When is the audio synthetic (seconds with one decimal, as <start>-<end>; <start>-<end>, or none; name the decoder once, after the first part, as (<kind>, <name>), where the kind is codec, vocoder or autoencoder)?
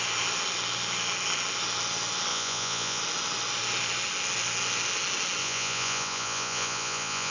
2.3-3.0 (vocoder, Vocos); 5.4-7.3